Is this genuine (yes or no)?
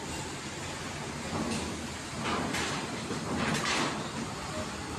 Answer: yes